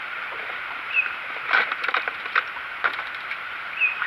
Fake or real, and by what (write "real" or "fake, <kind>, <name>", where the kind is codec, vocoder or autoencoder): fake, vocoder, BigVGAN v2